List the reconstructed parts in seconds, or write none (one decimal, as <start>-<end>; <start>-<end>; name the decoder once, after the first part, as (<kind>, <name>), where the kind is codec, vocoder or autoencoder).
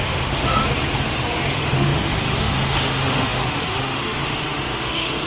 0.0-0.6 (autoencoder, DAC-VAE); 1.5-5.3